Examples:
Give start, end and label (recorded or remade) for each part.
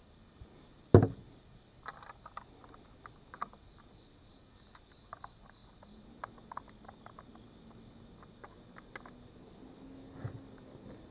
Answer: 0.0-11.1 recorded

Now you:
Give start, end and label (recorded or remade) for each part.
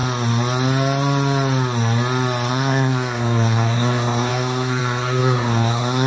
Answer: 0.0-2.5 recorded; 2.5-6.1 remade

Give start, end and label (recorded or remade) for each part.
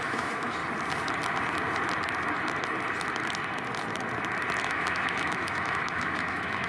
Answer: 0.0-0.6 remade; 0.6-4.6 recorded; 4.6-6.7 remade